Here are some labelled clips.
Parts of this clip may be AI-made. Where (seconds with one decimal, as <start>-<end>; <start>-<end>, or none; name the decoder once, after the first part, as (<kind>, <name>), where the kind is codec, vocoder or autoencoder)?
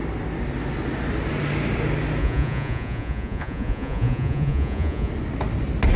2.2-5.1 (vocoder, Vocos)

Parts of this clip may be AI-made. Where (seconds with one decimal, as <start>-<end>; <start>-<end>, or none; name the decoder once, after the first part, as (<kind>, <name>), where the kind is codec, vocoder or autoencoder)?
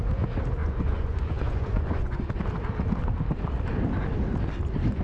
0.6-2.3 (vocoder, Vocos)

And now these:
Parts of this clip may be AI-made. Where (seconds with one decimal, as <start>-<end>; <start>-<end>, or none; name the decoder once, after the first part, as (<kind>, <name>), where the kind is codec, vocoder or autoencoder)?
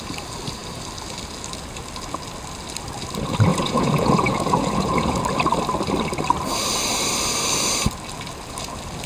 3.5-5.2 (vocoder, Vocos)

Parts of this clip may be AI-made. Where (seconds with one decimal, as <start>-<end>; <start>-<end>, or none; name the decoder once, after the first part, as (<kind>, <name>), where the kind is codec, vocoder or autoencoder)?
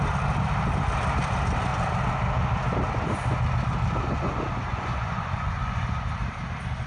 4.7-5.9 (vocoder, Vocos)